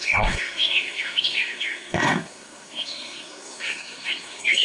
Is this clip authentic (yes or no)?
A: no